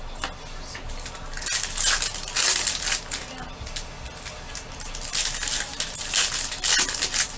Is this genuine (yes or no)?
yes